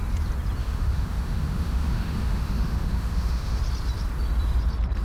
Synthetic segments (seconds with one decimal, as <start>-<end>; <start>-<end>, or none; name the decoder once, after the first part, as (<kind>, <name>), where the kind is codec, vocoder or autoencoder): 0.6-3.6 (autoencoder, DAC-VAE)